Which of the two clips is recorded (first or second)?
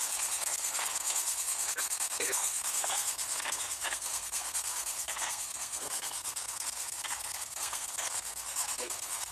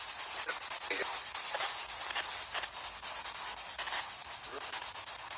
second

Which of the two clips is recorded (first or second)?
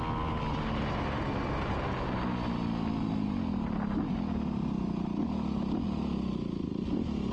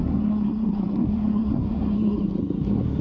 first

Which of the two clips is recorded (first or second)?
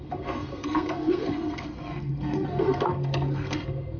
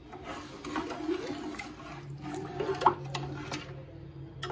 second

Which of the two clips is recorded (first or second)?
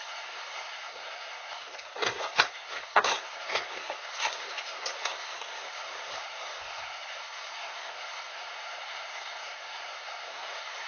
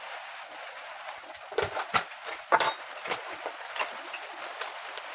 second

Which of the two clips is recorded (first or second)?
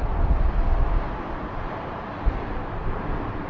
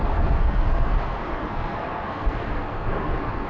first